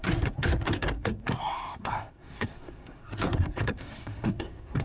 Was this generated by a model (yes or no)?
yes